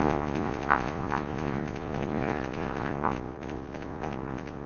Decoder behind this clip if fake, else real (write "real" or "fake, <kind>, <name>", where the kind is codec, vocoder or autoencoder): fake, vocoder, Vocos